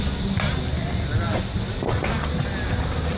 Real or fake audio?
real